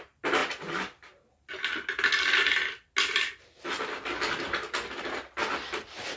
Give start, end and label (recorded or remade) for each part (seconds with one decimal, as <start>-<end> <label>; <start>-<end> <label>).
0.0-6.2 recorded